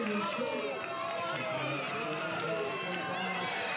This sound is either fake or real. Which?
fake